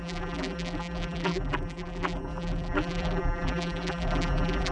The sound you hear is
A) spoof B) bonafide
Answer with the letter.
A